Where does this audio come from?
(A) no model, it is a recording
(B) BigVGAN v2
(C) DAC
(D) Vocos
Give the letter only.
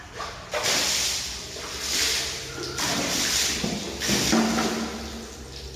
A